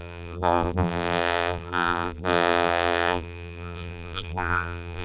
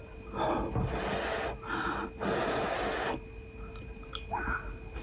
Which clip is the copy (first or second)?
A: first